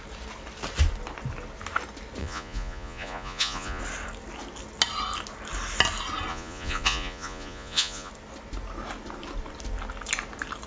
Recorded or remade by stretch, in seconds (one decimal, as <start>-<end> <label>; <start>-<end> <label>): 0.0-2.2 recorded; 2.2-3.8 remade; 3.8-6.3 recorded; 6.3-8.1 remade; 8.1-10.7 recorded